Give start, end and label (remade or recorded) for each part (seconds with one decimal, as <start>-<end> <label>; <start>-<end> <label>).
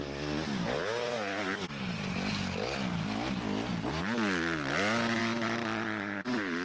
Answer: 0.0-6.6 recorded